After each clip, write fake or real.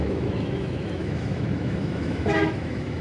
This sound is fake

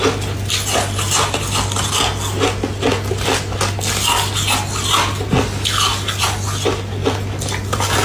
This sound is real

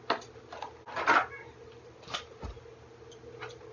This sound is real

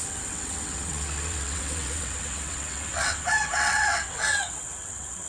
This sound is fake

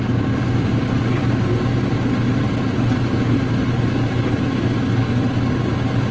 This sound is real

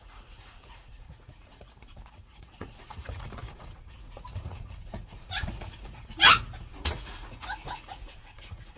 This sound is fake